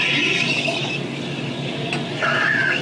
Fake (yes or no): no